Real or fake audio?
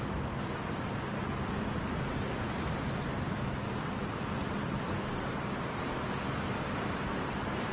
real